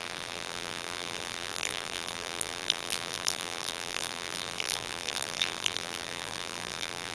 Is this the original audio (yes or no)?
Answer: no